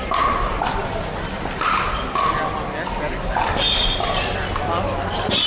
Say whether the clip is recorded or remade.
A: recorded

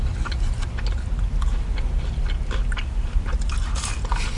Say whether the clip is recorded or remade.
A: recorded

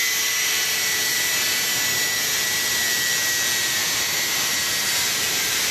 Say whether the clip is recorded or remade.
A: recorded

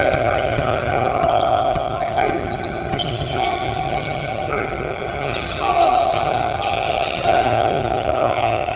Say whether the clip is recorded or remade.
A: remade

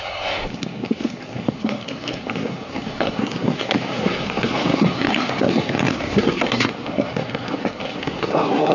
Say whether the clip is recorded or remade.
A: remade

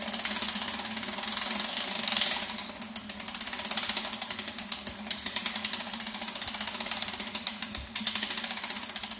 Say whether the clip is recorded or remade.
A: recorded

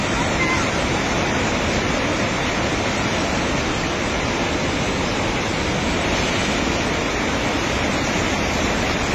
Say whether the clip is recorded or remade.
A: recorded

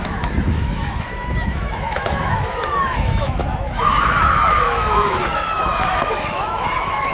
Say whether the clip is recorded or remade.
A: remade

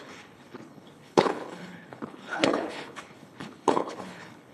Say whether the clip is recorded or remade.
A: remade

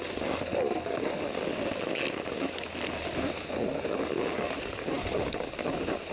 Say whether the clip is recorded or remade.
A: recorded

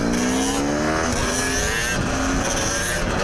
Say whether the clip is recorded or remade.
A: recorded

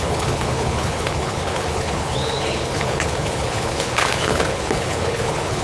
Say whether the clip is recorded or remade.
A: remade